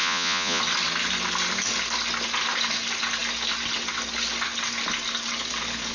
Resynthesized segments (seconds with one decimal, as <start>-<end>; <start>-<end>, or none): 0.0-0.6